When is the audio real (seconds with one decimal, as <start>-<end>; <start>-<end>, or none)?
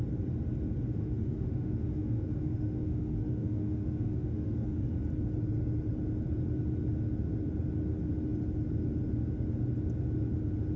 0.0-1.0; 4.8-10.8